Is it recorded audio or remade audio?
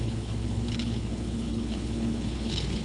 remade